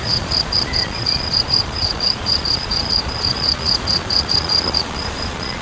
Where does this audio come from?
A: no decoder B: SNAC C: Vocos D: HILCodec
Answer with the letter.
C